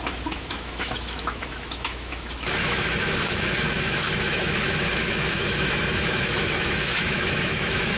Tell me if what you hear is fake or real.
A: fake